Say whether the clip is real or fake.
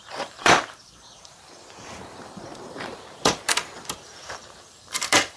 fake